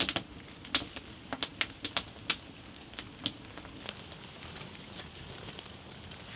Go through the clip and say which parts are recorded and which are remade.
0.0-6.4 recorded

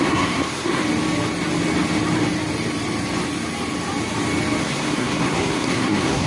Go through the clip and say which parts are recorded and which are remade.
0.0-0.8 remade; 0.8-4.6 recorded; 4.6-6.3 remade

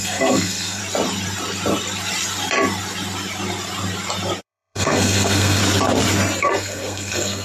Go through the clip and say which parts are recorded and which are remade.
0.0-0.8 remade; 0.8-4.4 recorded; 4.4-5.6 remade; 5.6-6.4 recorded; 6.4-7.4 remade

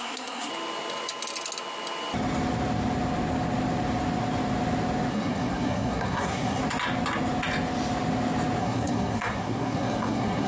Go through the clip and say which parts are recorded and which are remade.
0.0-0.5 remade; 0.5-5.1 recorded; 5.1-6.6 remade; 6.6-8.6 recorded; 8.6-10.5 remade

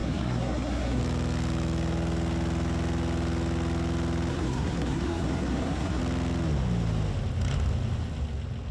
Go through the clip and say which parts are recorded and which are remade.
0.0-1.0 remade; 1.0-4.3 recorded; 4.3-6.0 remade; 6.0-8.7 recorded